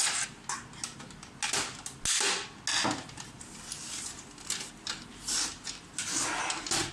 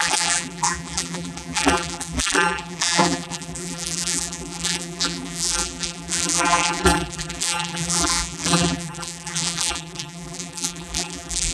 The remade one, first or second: second